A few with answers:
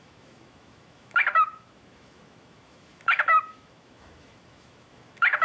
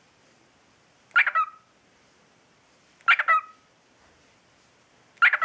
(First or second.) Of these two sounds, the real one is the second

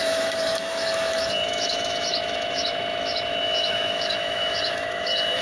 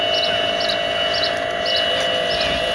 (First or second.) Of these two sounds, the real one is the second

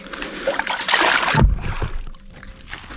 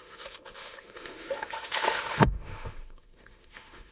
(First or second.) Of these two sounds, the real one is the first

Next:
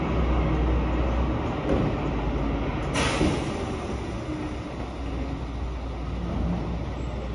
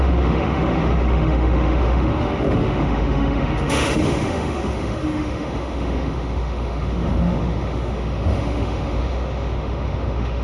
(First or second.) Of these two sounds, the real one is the first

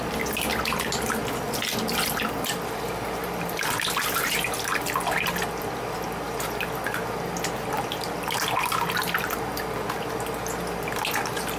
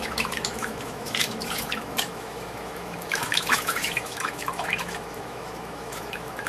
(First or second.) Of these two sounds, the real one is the first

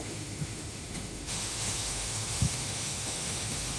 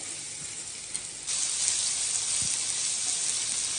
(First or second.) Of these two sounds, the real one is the second